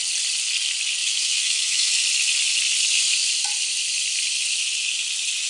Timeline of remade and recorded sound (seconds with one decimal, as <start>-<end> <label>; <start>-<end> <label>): 0.0-1.0 recorded; 1.0-1.9 remade; 1.9-5.5 recorded

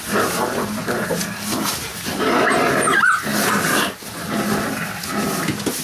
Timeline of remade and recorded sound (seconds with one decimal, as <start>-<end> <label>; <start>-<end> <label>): 0.0-5.8 recorded

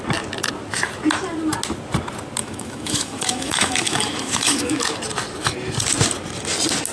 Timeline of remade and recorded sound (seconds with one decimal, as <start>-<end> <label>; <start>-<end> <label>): 0.0-2.4 recorded; 2.4-4.8 remade; 4.8-6.9 recorded

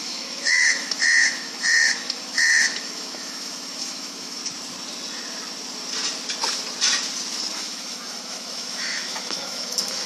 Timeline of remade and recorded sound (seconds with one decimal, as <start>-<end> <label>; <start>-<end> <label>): 0.0-4.4 remade; 4.4-7.5 recorded; 7.5-10.1 remade

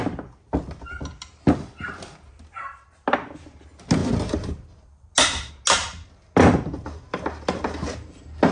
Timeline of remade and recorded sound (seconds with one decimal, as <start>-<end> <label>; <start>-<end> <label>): 0.0-8.5 recorded

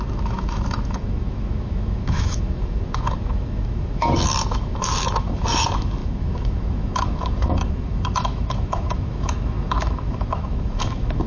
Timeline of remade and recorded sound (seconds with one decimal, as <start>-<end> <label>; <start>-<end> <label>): 0.0-11.3 remade

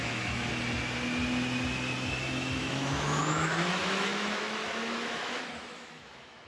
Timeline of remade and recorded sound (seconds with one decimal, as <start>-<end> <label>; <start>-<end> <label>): 0.0-0.5 remade; 0.5-2.6 recorded; 2.6-6.5 remade

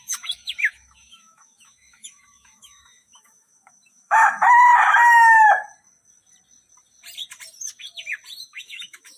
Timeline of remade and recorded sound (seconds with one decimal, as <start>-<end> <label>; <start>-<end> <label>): 0.0-4.7 remade; 4.7-8.4 recorded; 8.4-9.2 remade